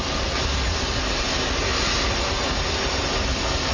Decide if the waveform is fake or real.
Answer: real